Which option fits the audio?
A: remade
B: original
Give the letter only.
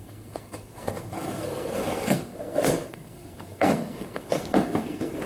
A